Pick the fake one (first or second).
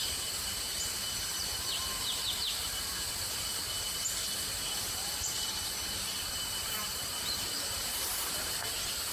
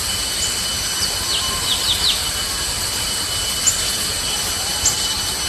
first